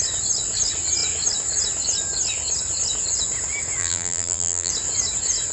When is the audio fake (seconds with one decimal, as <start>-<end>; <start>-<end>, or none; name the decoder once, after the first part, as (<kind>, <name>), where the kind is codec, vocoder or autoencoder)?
3.8-4.7 (vocoder, BigVGAN v2)